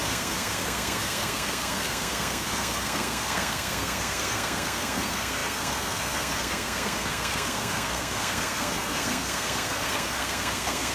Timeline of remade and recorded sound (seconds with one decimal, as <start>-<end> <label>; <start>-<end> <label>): 0.0-10.9 remade